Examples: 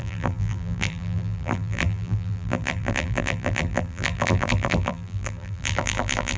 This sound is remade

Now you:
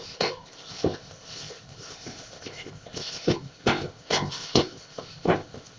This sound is remade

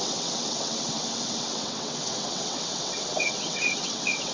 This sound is remade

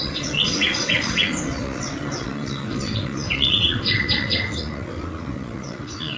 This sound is remade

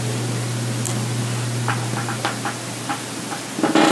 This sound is recorded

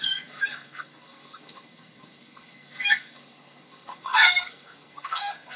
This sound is remade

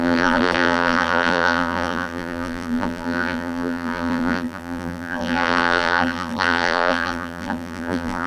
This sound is remade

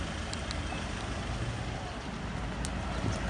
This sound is recorded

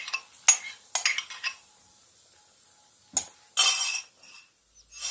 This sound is recorded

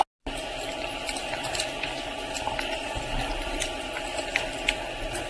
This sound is recorded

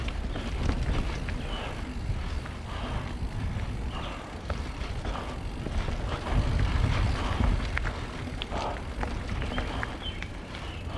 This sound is recorded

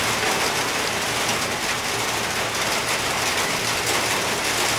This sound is recorded